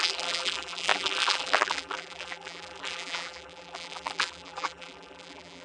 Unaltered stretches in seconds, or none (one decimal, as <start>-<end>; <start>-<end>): none